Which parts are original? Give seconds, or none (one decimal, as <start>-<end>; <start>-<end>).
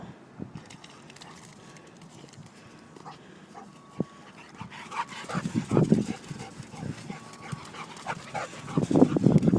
0.0-9.6